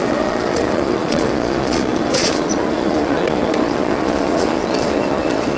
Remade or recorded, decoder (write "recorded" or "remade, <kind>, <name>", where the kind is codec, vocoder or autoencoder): remade, vocoder, Vocos